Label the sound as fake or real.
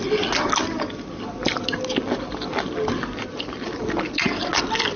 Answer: real